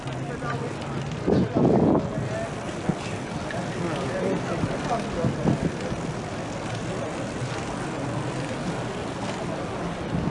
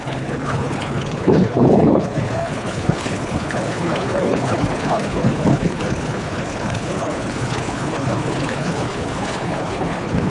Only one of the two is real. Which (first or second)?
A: first